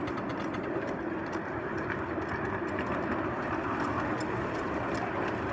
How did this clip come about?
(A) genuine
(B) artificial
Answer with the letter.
A